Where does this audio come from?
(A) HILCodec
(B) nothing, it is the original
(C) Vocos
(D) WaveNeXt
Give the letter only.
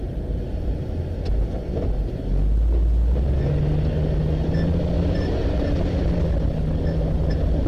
B